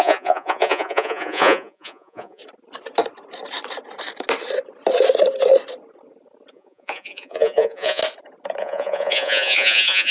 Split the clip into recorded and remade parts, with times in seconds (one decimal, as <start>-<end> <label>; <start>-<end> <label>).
0.0-2.4 remade; 2.4-6.5 recorded; 6.5-8.0 remade; 8.0-8.6 recorded; 8.6-10.1 remade